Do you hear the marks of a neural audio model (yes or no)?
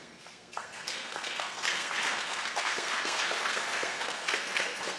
yes